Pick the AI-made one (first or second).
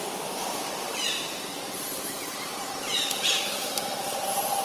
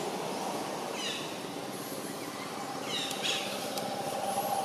first